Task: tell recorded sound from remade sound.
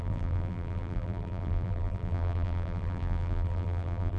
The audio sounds remade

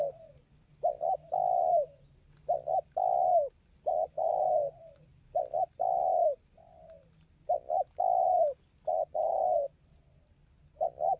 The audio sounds recorded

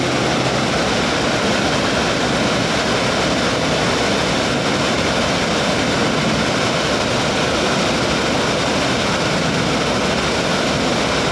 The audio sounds recorded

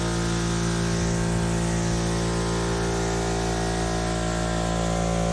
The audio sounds recorded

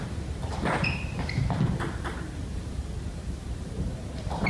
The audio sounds remade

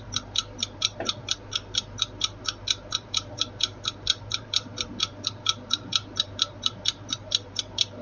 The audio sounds remade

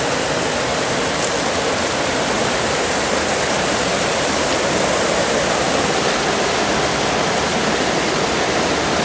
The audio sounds recorded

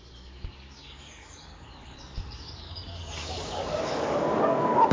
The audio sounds remade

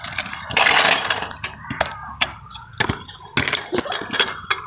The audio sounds recorded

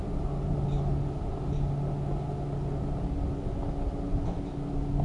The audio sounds recorded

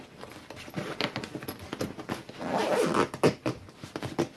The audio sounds recorded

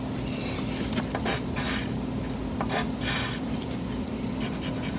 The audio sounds recorded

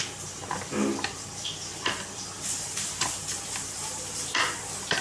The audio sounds recorded